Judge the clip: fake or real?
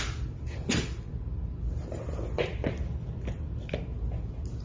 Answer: real